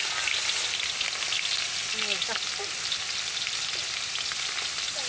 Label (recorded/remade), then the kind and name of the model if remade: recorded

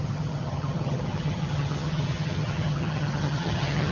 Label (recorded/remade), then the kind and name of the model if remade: remade, vocoder, HiFi-GAN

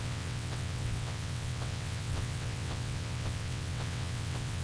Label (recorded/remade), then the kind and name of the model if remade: remade, vocoder, WaveNeXt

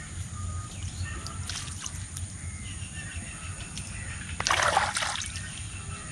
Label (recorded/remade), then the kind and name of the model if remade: recorded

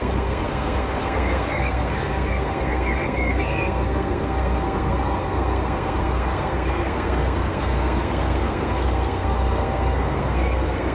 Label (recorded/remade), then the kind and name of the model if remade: remade, codec, SNAC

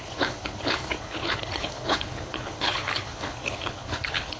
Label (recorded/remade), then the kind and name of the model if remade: remade, codec, HILCodec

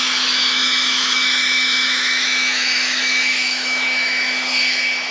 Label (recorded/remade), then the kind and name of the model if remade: remade, autoencoder, DAC-VAE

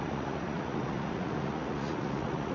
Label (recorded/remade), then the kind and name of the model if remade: remade, vocoder, Vocos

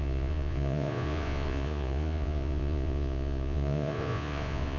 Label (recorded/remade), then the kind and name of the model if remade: remade, vocoder, Vocos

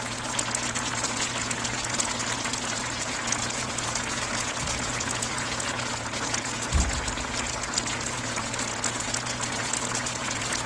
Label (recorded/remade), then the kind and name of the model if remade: remade, vocoder, Vocos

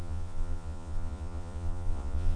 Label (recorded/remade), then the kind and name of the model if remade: remade, vocoder, Vocos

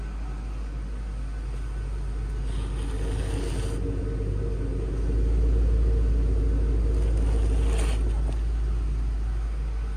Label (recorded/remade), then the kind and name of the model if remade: recorded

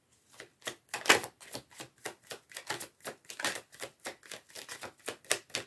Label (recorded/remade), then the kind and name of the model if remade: recorded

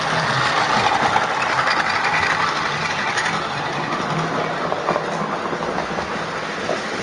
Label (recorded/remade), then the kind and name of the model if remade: recorded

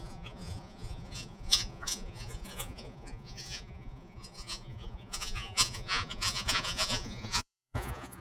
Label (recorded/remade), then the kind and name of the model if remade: remade, vocoder, Vocos